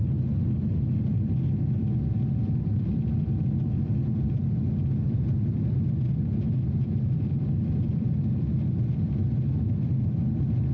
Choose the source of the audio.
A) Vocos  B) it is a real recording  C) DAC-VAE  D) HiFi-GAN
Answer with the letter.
B